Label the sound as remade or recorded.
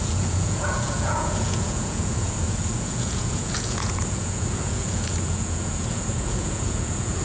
remade